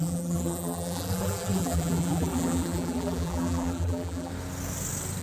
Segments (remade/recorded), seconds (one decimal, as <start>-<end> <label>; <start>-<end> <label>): 0.0-4.3 remade; 4.3-5.2 recorded